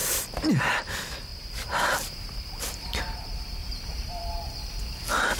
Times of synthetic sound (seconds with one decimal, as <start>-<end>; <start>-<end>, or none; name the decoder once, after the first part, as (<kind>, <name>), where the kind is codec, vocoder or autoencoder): 1.3-3.0 (vocoder, BigVGAN v2); 3.6-4.2